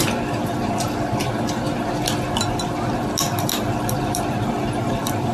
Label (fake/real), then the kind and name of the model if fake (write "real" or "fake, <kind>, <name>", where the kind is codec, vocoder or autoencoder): real